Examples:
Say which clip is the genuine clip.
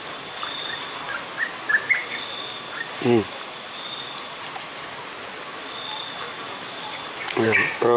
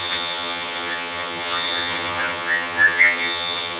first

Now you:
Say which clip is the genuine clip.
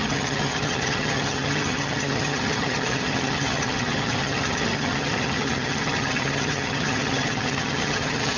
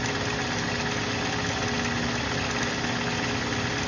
second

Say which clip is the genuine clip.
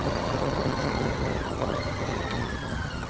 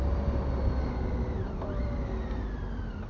second